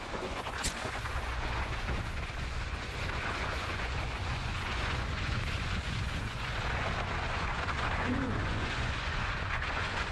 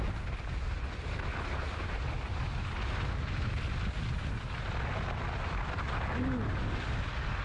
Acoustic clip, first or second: second